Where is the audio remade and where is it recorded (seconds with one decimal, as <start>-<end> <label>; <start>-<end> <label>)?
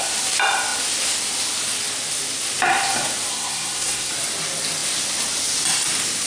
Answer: 0.0-3.3 recorded; 3.3-4.1 remade; 4.1-6.3 recorded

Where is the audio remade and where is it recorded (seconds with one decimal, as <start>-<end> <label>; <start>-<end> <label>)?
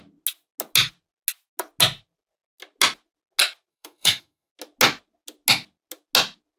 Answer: 0.0-3.7 recorded; 3.7-4.5 remade; 4.5-6.6 recorded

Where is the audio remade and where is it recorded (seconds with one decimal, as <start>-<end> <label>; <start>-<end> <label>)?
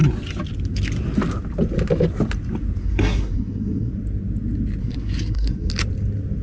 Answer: 0.0-2.8 recorded; 2.8-3.9 remade; 3.9-4.8 recorded; 4.8-5.7 remade; 5.7-6.4 recorded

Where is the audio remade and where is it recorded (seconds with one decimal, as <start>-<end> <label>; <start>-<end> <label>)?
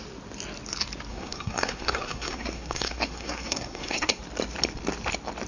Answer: 0.0-1.1 recorded; 1.1-4.2 remade; 4.2-5.5 recorded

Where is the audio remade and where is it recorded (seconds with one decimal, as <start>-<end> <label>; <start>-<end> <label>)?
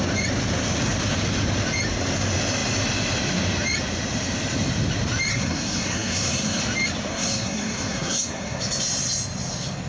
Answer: 0.0-5.3 recorded; 5.3-6.6 remade; 6.6-7.1 recorded; 7.1-8.6 remade; 8.6-9.9 recorded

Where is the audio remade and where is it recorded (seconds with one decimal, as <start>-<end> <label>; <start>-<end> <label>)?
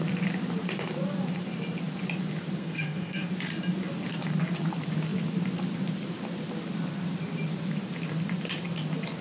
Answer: 0.0-2.6 recorded; 2.6-3.3 remade; 3.3-9.2 recorded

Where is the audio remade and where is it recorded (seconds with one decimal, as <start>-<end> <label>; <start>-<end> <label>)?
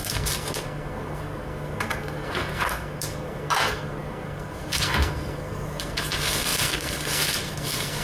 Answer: 0.0-8.0 remade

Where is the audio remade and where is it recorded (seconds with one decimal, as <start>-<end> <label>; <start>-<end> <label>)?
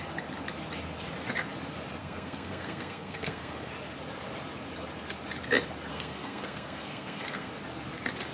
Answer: 0.0-2.0 recorded; 2.0-3.7 remade; 3.7-5.9 recorded; 5.9-7.5 remade; 7.5-8.3 recorded